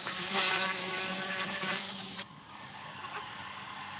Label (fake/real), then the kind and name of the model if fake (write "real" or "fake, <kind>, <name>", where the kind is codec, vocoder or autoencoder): fake, codec, DAC